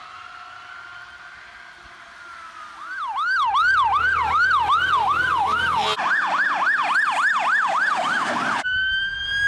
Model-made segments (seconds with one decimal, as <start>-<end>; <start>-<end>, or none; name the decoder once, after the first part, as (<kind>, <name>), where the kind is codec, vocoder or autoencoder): none